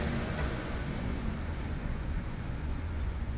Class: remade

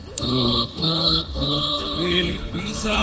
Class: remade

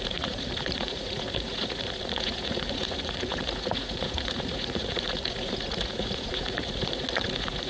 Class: remade